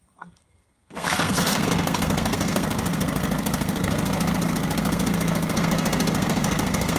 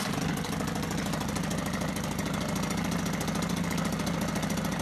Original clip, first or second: second